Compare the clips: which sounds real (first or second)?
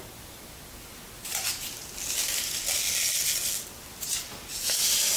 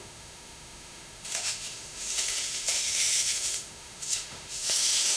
first